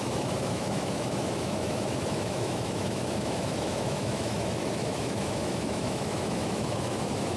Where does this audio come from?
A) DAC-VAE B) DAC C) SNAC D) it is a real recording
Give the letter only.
A